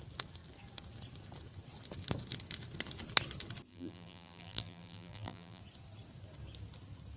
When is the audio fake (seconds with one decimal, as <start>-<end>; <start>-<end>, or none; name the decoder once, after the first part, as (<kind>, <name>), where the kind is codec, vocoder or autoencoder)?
3.7-5.6 (vocoder, BigVGAN v2)